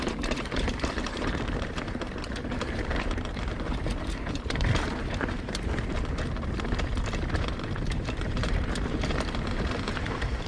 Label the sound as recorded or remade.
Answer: remade